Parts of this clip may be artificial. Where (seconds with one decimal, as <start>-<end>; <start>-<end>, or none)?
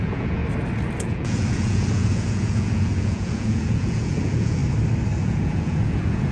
0.0-0.4; 1.0-4.6; 5.2-6.3